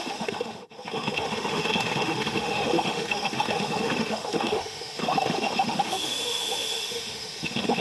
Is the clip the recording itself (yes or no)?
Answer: no